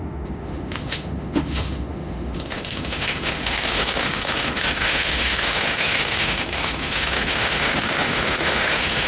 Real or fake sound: fake